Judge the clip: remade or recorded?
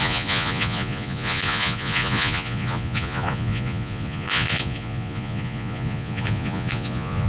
remade